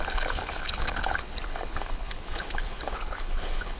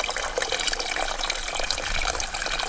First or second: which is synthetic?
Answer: first